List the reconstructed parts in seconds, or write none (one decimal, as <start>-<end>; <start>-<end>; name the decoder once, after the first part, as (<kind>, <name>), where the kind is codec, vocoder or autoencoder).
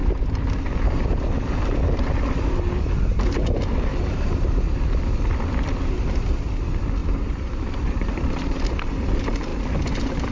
3.9-4.6 (vocoder, BigVGAN v2); 7.0-8.9